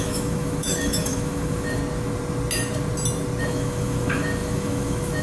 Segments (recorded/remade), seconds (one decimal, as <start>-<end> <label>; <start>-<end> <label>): 0.0-1.8 remade; 1.8-3.4 recorded; 3.4-5.2 remade

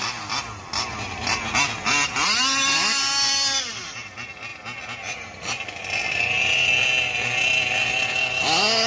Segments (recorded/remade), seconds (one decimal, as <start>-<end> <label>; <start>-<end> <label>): 0.0-8.9 recorded

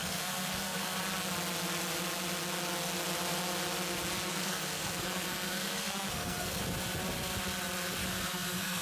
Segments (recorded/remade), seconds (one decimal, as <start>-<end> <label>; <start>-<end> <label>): 0.0-1.0 remade; 1.0-4.3 recorded; 4.3-6.6 remade; 6.6-8.0 recorded; 8.0-8.8 remade

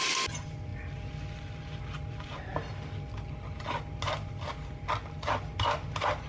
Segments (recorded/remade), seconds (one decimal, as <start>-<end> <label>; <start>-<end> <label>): 0.0-6.3 recorded

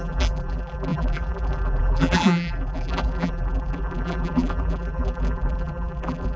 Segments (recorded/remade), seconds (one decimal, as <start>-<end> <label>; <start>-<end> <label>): 0.0-6.4 remade

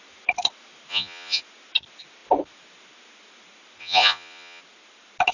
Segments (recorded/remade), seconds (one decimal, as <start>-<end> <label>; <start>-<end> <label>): 0.0-0.9 recorded; 0.9-1.4 remade; 1.4-3.8 recorded; 3.8-4.6 remade; 4.6-5.3 recorded

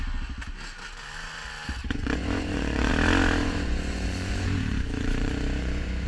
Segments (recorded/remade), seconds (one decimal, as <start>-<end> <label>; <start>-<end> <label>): 0.0-1.8 recorded; 1.8-2.9 remade; 2.9-3.4 recorded; 3.4-6.1 remade

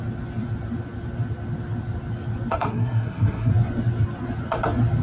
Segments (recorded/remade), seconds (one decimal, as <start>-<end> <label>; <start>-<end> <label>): 0.0-2.5 recorded; 2.5-3.5 remade; 3.5-5.0 recorded